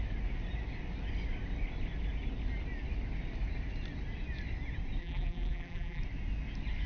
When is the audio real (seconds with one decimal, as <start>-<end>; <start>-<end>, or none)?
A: 0.0-5.0; 6.0-6.9